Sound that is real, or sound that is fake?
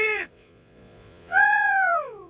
fake